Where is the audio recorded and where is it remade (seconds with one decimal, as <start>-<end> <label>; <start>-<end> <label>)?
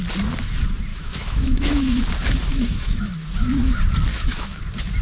0.0-0.9 recorded; 0.9-2.0 remade; 2.0-2.5 recorded; 2.5-3.0 remade; 3.0-4.1 recorded; 4.1-4.6 remade; 4.6-5.0 recorded